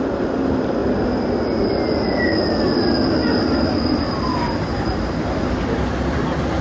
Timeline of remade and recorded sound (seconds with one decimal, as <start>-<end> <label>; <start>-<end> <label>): 0.0-0.8 remade; 0.8-4.1 recorded; 4.1-6.6 remade